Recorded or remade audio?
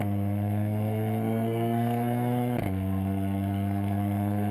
remade